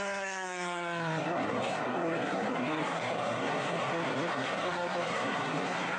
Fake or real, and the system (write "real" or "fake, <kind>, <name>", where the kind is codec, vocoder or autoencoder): fake, codec, SNAC